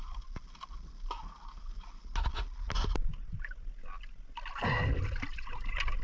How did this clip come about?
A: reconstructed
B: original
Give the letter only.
B